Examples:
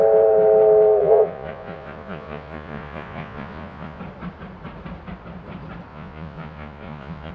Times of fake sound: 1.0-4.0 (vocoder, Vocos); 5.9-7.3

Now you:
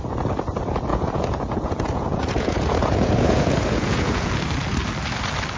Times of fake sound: 0.9-4.3 (vocoder, Vocos)

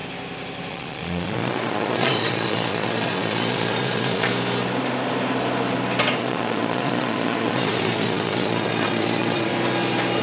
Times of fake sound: 0.7-4.3 (vocoder, Vocos); 6.2-9.5

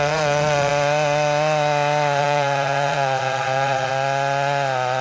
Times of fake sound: 0.0-0.7 (vocoder, Vocos); 2.2-3.9

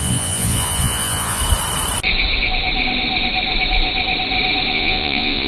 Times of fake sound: 0.0-1.4 (vocoder, Vocos); 4.7-5.5

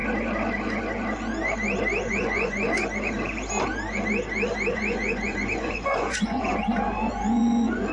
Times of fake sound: 2.1-2.8 (vocoder, Vocos); 4.7-7.9

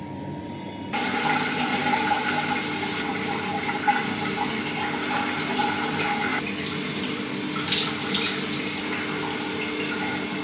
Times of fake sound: none